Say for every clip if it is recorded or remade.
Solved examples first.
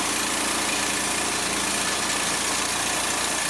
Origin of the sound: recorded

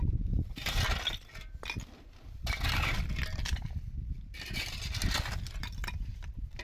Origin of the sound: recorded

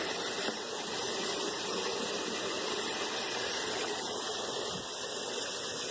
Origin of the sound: recorded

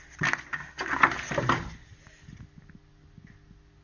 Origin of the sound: recorded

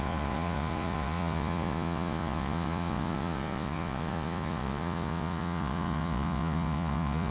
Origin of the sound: remade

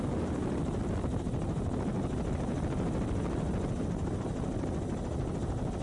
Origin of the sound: recorded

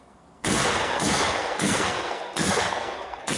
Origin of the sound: remade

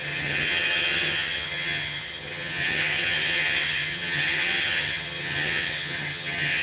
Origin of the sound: remade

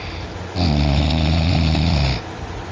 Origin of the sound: recorded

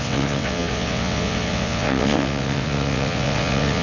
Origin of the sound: remade